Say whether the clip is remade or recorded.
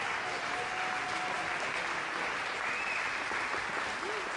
recorded